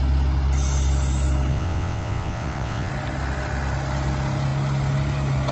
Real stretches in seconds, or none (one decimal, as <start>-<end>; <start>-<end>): 0.0-1.5; 2.9-5.5